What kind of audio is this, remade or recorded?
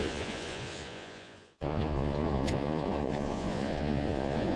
remade